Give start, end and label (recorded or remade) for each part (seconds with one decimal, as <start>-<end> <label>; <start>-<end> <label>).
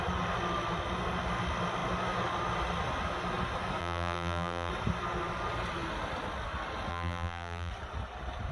0.0-3.8 recorded; 3.8-4.7 remade; 4.7-6.9 recorded; 6.9-7.7 remade; 7.7-8.5 recorded